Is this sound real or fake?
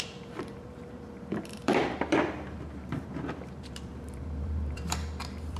fake